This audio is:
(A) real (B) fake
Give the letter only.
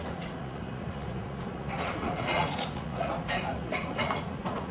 B